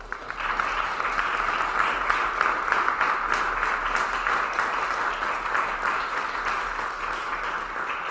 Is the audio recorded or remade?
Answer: recorded